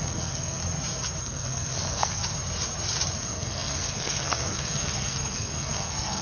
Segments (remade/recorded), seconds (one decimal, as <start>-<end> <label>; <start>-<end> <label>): 0.0-0.6 remade; 0.6-1.2 recorded; 1.2-2.2 remade; 2.2-3.2 recorded; 3.2-6.2 remade